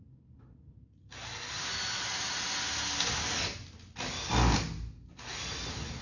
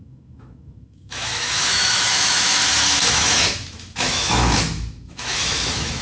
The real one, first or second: first